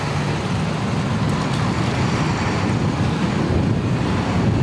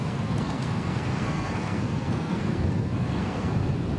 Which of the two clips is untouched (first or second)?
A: first